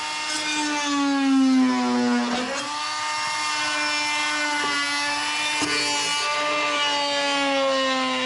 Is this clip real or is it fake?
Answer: real